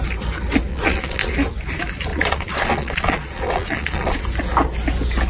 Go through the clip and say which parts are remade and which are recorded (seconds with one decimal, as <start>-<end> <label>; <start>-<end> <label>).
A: 0.0-0.7 recorded; 0.7-1.3 remade; 1.3-2.1 recorded; 2.1-4.2 remade; 4.2-5.3 recorded